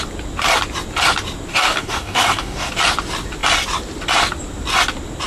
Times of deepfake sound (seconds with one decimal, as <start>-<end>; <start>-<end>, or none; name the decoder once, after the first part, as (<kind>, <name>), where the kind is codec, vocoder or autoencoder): 1.5-2.7 (codec, DAC)